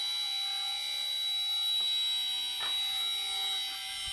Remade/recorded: recorded